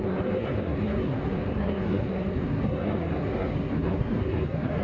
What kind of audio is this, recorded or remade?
remade